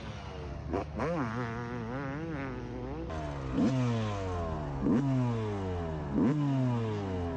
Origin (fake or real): real